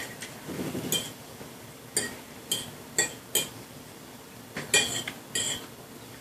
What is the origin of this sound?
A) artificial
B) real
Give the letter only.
B